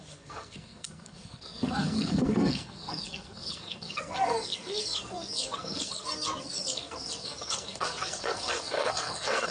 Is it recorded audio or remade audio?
remade